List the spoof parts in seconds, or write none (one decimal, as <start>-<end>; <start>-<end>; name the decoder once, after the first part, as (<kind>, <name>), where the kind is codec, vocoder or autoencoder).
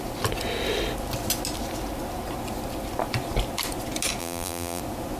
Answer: 4.2-4.8 (vocoder, BigVGAN v2)